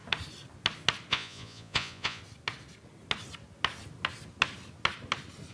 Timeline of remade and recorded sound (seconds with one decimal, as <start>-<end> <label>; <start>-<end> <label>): 0.0-1.1 recorded; 1.1-2.2 remade; 2.2-5.5 recorded

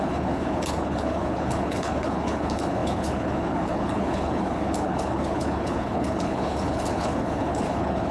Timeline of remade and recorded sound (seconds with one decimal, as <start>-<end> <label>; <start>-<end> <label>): 0.0-8.1 remade

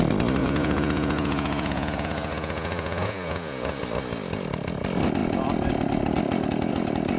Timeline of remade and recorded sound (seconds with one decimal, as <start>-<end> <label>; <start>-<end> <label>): 0.0-0.4 recorded; 0.4-3.8 remade; 3.8-7.2 recorded

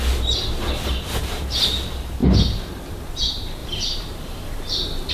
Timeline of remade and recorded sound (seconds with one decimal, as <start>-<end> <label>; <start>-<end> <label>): 0.0-2.2 recorded; 2.2-3.1 remade; 3.1-3.6 recorded; 3.6-5.1 remade

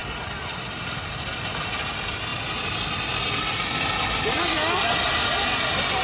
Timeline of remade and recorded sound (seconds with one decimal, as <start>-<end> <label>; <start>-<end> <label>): 0.0-6.0 recorded